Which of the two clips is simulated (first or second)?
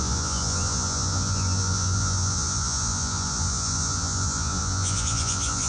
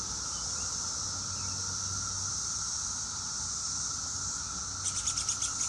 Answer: first